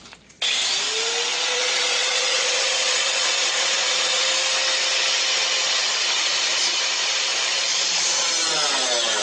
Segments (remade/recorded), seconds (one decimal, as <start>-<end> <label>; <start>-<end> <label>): 0.0-1.3 recorded; 1.3-4.2 remade; 4.2-7.3 recorded; 7.3-8.3 remade; 8.3-9.2 recorded

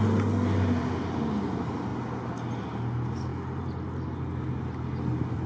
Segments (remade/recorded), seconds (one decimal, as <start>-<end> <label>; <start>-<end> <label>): 0.0-5.5 recorded